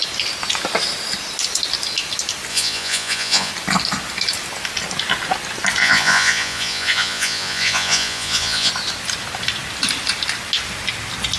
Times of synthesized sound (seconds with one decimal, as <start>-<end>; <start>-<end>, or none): 2.5-3.5; 5.8-8.7